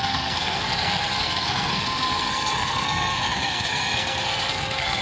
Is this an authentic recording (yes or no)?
no